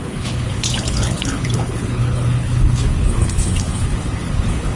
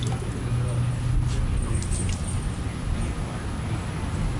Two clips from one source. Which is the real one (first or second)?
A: second